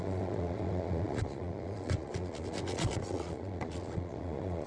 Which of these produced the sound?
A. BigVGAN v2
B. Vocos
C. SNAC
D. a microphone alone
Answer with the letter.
B